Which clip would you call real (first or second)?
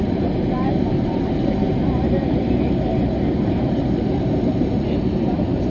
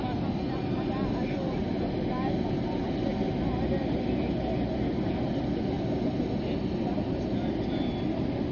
second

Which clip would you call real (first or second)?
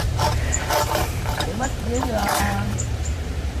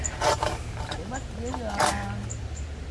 second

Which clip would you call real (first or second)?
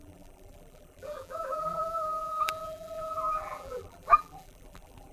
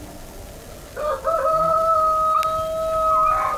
second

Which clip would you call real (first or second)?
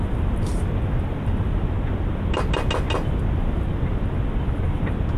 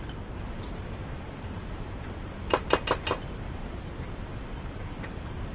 first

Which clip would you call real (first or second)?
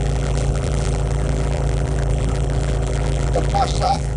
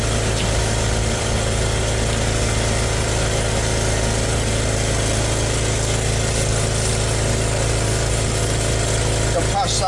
second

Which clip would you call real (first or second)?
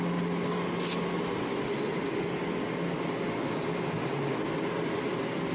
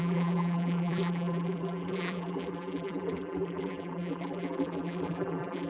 first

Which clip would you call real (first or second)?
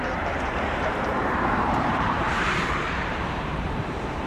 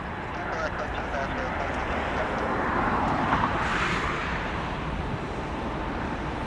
second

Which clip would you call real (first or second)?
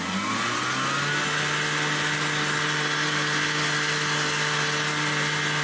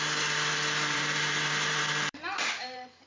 first